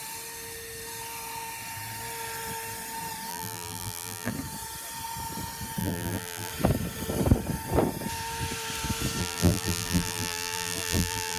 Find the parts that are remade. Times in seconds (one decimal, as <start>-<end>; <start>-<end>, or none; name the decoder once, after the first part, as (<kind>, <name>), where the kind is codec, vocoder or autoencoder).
3.3-4.3 (vocoder, BigVGAN v2); 5.8-6.5; 9.2-11.4